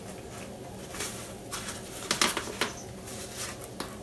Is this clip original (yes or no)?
yes